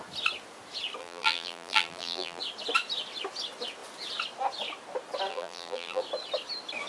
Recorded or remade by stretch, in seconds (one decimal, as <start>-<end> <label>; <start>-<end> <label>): 0.0-1.0 recorded; 1.0-2.4 remade; 2.4-5.3 recorded; 5.3-6.0 remade; 6.0-6.9 recorded